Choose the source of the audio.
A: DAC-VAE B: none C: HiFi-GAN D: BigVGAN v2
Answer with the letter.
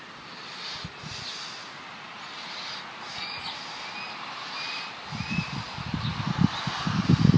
B